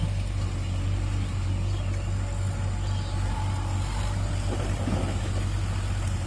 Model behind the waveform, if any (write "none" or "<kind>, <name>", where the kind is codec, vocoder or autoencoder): none